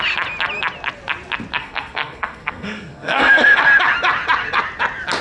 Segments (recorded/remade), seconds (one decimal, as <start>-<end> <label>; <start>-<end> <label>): 0.0-1.6 recorded; 1.6-3.6 remade; 3.6-5.2 recorded